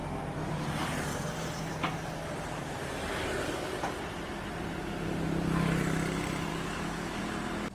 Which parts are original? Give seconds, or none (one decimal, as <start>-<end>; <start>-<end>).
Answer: 0.0-6.5; 7.2-7.7